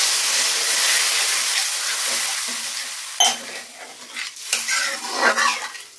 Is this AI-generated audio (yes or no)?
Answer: no